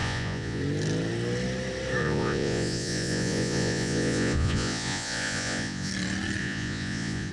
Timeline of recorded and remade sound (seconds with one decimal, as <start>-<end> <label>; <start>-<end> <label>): 0.0-0.6 remade; 0.6-2.0 recorded; 2.0-5.9 remade; 5.9-6.4 recorded; 6.4-7.3 remade